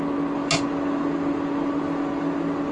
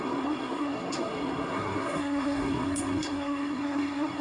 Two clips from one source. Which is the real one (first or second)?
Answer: first